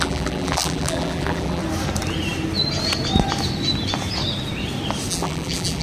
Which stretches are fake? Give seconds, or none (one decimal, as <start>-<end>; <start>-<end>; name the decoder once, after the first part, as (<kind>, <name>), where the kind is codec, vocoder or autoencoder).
0.0-1.6 (vocoder, BigVGAN v2); 5.1-5.8

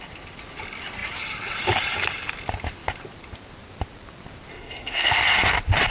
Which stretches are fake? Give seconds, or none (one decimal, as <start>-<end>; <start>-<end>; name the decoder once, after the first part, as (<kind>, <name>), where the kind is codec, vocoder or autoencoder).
4.5-5.2 (codec, SNAC)